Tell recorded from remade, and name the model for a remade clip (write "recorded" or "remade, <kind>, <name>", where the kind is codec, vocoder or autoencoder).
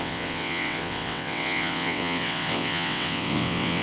remade, vocoder, WaveNeXt